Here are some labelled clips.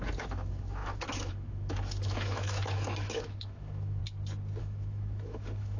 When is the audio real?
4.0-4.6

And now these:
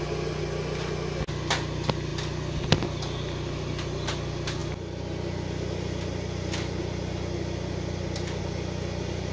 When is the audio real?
0.0-9.3